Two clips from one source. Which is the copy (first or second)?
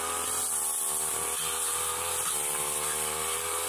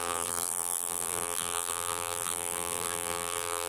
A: second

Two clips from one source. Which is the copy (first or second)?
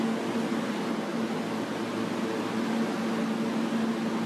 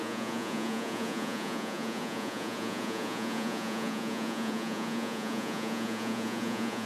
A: second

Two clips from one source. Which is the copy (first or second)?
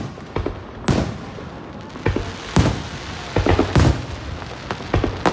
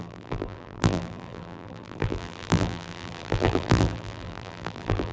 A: second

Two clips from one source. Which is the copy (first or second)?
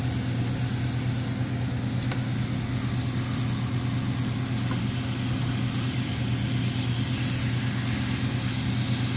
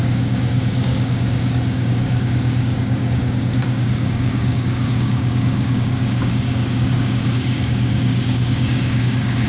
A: second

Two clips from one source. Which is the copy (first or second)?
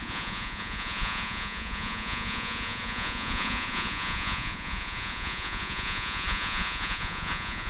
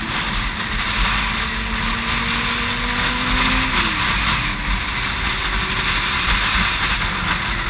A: first